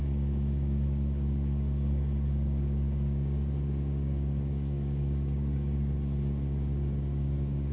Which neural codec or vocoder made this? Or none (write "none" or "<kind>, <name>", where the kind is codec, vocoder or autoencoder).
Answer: codec, DAC